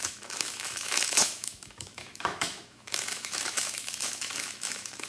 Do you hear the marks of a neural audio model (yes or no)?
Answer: yes